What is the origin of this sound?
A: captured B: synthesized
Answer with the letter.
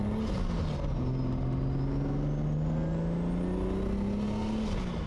A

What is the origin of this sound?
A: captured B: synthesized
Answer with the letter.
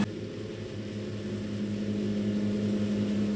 A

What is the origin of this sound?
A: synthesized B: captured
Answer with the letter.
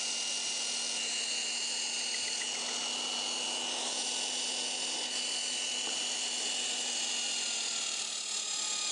B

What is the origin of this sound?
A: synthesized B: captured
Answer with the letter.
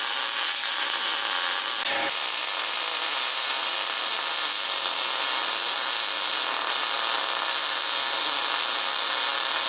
B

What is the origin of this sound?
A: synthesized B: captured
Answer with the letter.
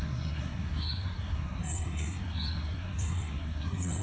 A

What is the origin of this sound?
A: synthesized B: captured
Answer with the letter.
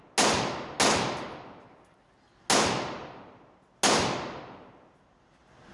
B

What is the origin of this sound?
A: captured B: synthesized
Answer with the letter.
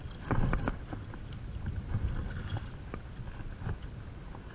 A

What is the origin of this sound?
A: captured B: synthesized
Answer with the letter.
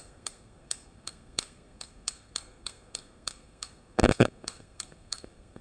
B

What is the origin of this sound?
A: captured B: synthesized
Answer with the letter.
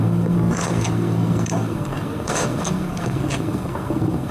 B